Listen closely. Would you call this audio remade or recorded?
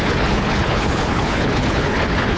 remade